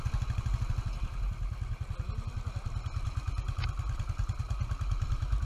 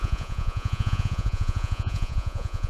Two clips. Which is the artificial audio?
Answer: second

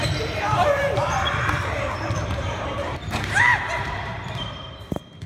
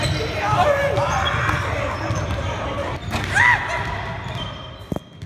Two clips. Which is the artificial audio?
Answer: first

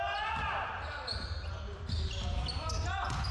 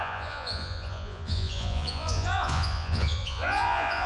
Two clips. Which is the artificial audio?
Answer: second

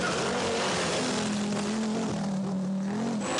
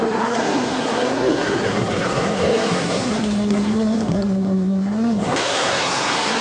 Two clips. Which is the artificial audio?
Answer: second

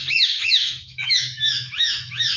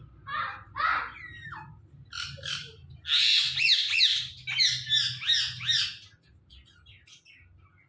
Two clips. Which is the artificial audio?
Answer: first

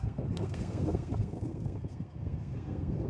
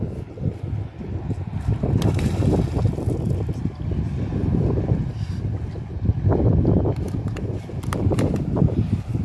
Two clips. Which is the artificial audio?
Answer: first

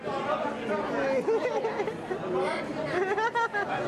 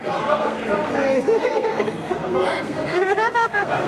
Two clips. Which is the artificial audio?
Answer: second